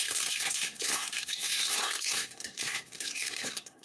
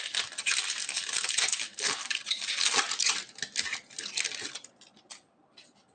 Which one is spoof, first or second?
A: first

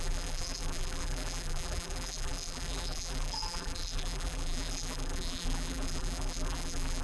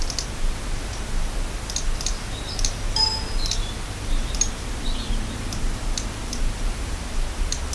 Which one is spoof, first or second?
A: first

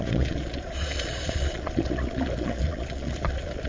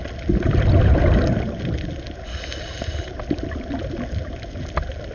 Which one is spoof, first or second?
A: first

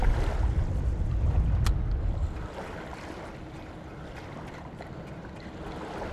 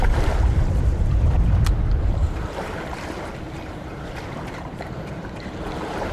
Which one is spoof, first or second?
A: second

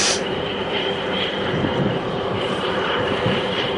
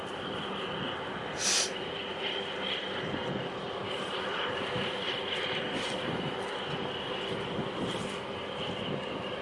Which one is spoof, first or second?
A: first